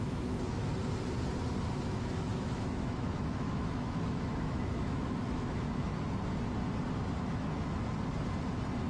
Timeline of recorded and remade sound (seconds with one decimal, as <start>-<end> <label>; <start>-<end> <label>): 0.0-0.6 remade; 0.6-2.2 recorded; 2.2-5.9 remade; 5.9-8.9 recorded